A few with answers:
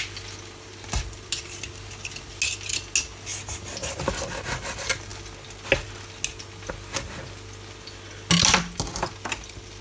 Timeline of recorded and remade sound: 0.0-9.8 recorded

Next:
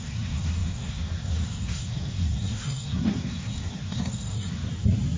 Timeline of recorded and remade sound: 0.0-4.7 remade; 4.7-5.2 recorded

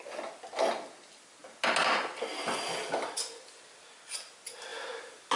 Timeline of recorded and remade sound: 0.0-5.4 recorded

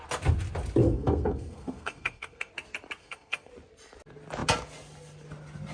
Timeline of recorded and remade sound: 0.0-0.8 recorded; 0.8-2.5 remade; 2.5-3.0 recorded; 3.0-3.5 remade; 3.5-5.7 recorded

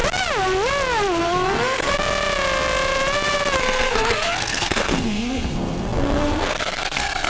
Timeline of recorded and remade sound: 0.0-1.2 recorded; 1.2-1.9 remade; 1.9-3.6 recorded; 3.6-7.3 remade

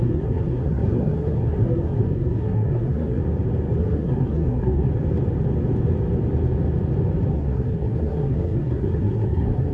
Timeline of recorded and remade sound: 0.0-3.2 remade; 3.2-3.8 recorded; 3.8-4.9 remade; 4.9-7.3 recorded; 7.3-9.7 remade

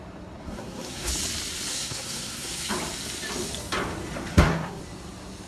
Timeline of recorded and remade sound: 0.0-0.4 recorded; 0.4-1.1 remade; 1.1-1.7 recorded; 1.7-2.7 remade; 2.7-4.3 recorded; 4.3-4.8 remade; 4.8-5.5 recorded